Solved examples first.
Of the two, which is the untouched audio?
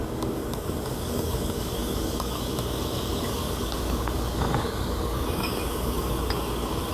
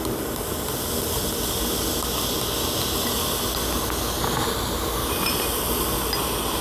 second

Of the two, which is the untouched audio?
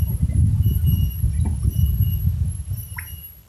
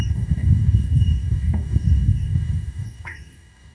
first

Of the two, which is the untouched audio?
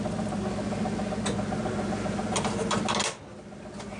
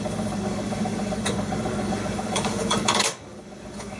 first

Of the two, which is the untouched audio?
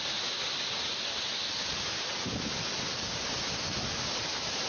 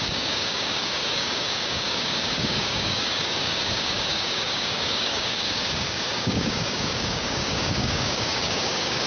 first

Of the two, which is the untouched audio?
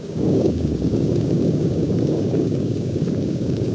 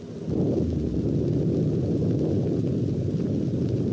second